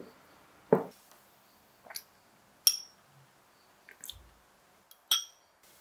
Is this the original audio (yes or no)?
yes